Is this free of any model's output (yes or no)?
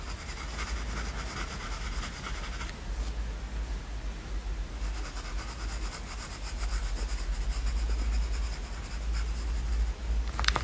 yes